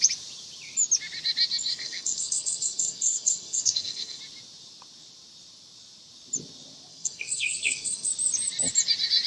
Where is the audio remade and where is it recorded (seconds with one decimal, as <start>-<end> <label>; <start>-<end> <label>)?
0.0-1.7 recorded; 1.7-4.2 remade; 4.2-6.9 recorded; 6.9-8.1 remade; 8.1-9.3 recorded